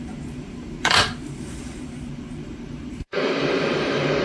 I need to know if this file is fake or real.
fake